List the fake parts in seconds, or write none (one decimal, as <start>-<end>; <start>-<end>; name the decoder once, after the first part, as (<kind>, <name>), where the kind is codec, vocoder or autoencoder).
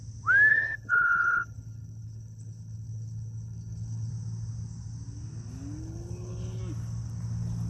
0.5-4.1 (codec, HILCodec); 5.8-6.6